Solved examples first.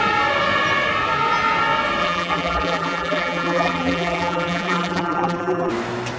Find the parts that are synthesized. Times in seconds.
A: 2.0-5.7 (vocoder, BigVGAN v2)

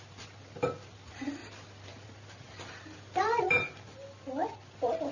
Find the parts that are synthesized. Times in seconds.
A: none

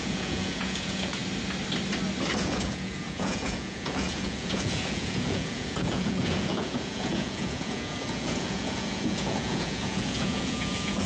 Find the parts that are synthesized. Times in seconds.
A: 0.0-1.2 (vocoder, Vocos); 2.4-11.1

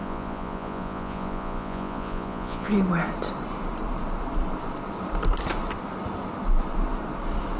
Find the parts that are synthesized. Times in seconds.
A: 0.0-2.7 (vocoder, Vocos)

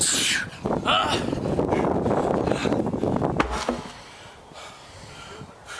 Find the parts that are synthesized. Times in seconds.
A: none

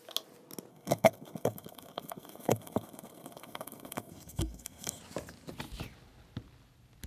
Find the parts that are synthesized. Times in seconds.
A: 0.7-5.0 (codec, SNAC)

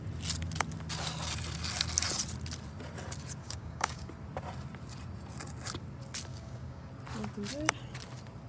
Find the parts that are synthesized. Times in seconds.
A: 3.4-4.1 (codec, DAC); 6.3-6.9